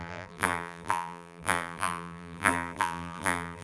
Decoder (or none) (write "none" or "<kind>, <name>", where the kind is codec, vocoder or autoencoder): vocoder, BigVGAN v2